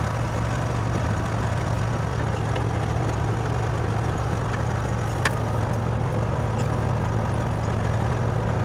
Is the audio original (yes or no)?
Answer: yes